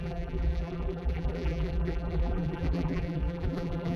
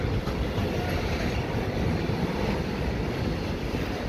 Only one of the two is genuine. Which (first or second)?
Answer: second